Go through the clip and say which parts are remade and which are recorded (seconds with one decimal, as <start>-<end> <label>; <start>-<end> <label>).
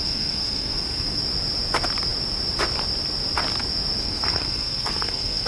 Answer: 0.0-1.2 remade; 1.2-4.0 recorded; 4.0-5.5 remade